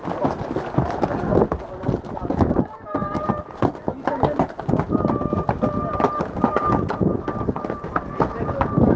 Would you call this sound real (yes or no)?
yes